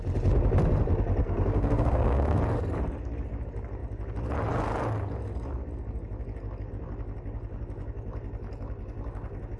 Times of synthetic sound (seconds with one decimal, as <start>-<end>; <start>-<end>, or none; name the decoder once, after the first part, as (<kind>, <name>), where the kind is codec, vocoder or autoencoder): 1.2-2.4 (codec, SNAC)